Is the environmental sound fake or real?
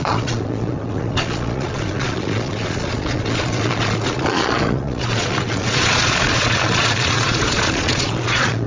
fake